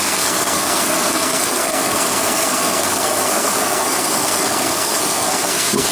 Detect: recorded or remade remade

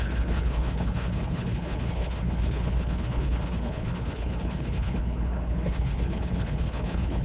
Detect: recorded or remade remade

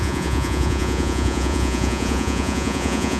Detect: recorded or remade remade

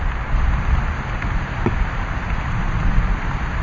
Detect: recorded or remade recorded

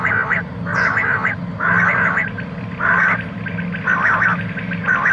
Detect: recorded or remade recorded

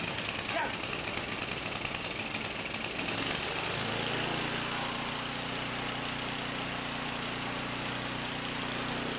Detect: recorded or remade recorded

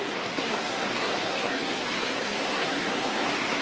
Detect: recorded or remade remade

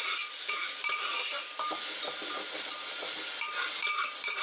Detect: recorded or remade recorded